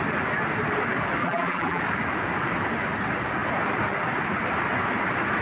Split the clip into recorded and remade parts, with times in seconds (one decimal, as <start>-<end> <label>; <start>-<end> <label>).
0.0-1.2 recorded; 1.2-1.8 remade; 1.8-5.4 recorded